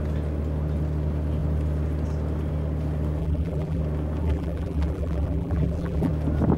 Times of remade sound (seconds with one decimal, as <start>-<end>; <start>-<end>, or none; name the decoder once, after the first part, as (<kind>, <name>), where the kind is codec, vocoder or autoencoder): 3.2-3.8 (vocoder, BigVGAN v2); 4.2-6.1